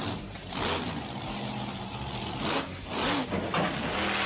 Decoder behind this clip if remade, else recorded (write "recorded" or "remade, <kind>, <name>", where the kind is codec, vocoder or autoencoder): recorded